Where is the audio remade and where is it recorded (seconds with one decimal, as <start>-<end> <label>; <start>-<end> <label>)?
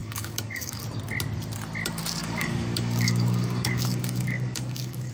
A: 0.0-0.8 remade; 0.8-2.2 recorded; 2.2-5.1 remade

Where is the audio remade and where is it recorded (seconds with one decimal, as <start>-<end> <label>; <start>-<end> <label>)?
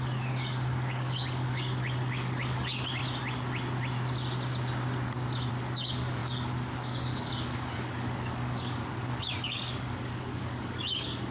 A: 0.0-3.0 remade; 3.0-5.5 recorded; 5.5-11.3 remade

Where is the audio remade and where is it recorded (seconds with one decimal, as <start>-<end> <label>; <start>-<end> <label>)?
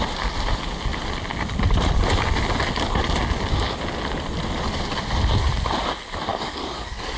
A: 0.0-6.3 recorded; 6.3-7.2 remade